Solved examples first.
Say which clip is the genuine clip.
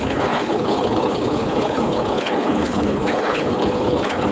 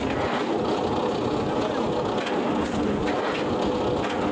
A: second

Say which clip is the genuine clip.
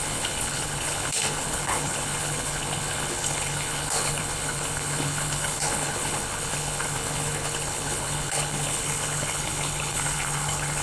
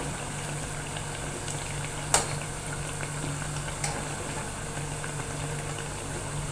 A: second